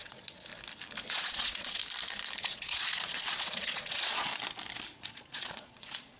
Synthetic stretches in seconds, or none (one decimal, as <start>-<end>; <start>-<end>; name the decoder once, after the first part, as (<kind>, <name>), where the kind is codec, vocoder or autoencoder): 0.0-0.5 (vocoder, Vocos); 1.1-1.8; 2.4-4.3; 5.0-6.2